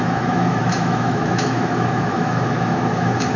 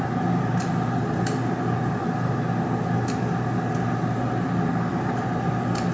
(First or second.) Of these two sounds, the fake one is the first